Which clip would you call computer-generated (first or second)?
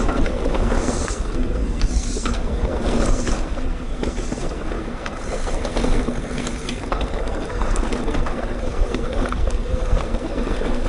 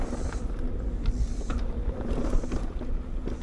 first